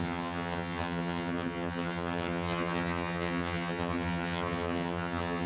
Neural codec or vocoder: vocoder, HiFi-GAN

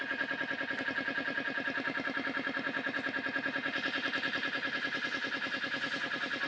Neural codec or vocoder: none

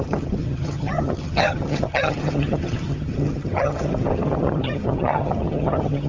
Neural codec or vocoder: vocoder, HiFi-GAN